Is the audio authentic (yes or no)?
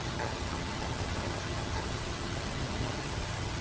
no